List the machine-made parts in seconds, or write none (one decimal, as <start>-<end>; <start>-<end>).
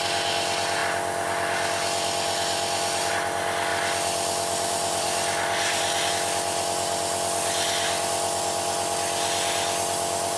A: 3.7-6.1